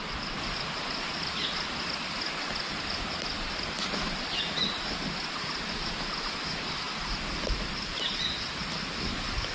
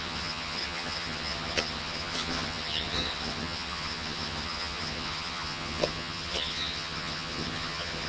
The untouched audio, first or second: first